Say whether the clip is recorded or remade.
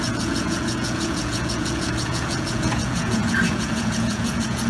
remade